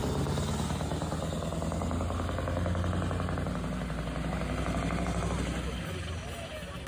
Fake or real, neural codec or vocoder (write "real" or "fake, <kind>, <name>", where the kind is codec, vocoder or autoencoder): real